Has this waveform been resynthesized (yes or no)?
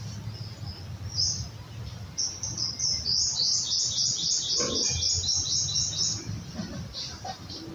no